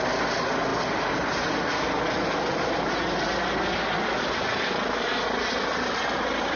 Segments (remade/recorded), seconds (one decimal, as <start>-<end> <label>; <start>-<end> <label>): 0.0-6.6 recorded